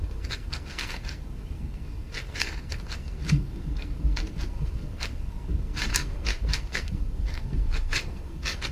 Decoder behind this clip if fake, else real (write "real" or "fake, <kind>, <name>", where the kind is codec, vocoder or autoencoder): fake, codec, SNAC